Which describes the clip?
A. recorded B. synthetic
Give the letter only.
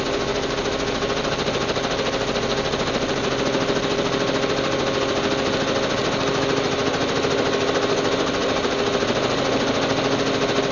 A